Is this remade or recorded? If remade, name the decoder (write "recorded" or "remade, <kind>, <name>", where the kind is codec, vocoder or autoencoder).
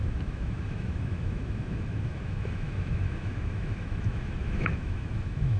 remade, autoencoder, DAC-VAE